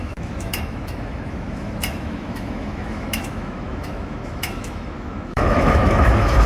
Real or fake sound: fake